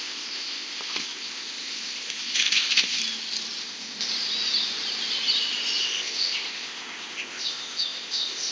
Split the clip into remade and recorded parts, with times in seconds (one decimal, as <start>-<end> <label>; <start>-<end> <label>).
0.0-3.0 remade; 3.0-3.6 recorded; 3.6-4.1 remade; 4.1-5.8 recorded; 5.8-8.5 remade